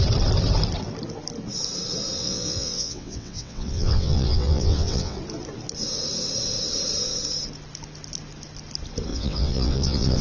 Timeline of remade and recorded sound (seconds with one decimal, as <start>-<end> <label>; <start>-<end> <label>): 0.0-2.2 recorded; 2.2-5.2 remade; 5.2-9.1 recorded; 9.1-10.2 remade